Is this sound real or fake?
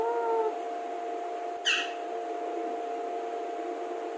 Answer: real